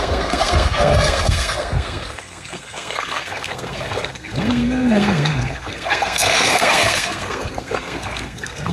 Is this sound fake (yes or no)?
yes